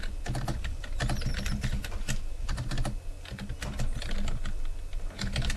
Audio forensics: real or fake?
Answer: real